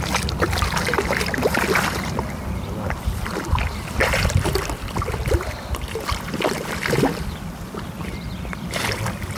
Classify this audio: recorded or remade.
remade